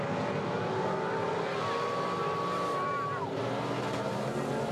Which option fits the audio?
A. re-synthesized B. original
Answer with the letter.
B